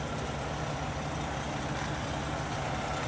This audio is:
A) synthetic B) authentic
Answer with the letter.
B